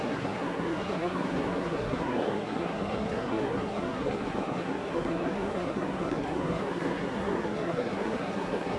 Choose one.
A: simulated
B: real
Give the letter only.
A